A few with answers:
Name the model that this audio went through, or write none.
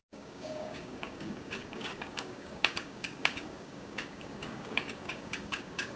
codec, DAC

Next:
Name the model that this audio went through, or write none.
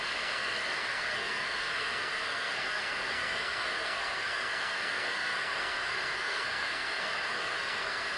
codec, SNAC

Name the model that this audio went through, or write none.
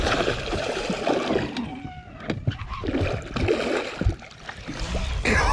none